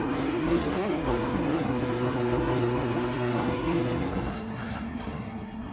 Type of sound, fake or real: fake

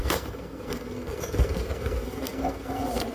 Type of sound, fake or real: fake